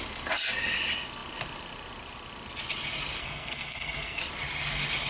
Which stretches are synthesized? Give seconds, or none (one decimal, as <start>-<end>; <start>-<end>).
3.2-4.2